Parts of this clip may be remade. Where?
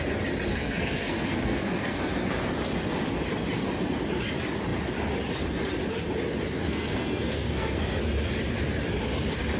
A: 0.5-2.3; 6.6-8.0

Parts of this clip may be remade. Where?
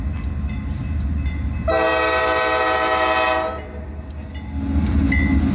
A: none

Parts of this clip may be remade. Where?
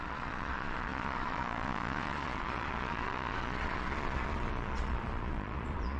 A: 0.0-6.0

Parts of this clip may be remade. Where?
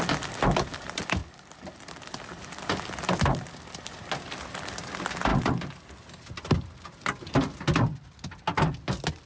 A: 1.2-2.6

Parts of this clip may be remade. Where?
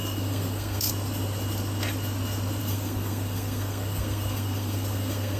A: 0.0-0.9; 2.6-5.4